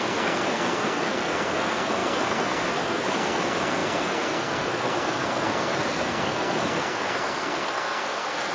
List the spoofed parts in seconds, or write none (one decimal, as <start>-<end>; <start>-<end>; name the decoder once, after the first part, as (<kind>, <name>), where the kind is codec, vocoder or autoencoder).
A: 0.0-8.5 (codec, SNAC)